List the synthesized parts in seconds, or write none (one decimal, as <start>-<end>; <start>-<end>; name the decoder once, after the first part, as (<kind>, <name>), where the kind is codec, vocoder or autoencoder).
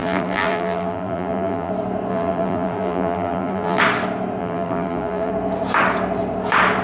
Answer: 0.0-1.7 (vocoder, BigVGAN v2); 2.1-3.8; 4.4-5.3